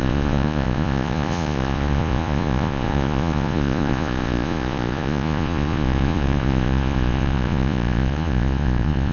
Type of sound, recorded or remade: remade